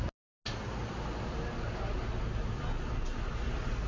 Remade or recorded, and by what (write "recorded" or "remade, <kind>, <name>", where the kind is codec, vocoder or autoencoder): recorded